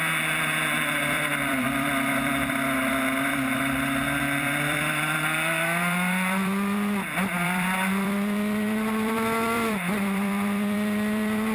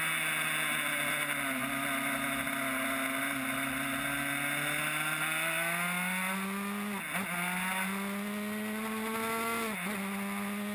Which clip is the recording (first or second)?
second